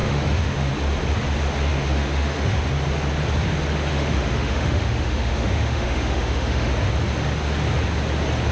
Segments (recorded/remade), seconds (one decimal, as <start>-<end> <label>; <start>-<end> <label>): 0.0-0.7 remade; 0.7-1.7 recorded; 1.7-2.6 remade; 2.6-3.9 recorded; 3.9-6.7 remade; 6.7-8.5 recorded